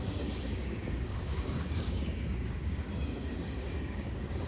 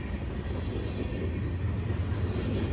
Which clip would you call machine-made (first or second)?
first